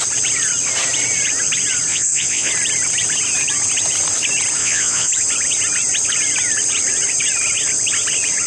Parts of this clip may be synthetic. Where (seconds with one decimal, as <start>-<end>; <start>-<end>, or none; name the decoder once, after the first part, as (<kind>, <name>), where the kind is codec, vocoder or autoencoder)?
1.9-2.5 (vocoder, Vocos); 4.6-5.1